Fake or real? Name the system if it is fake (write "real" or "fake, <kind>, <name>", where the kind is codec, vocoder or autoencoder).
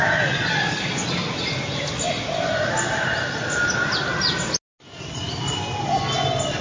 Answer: real